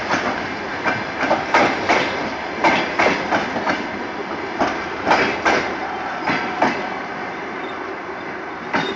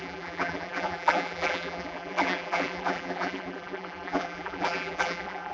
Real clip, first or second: first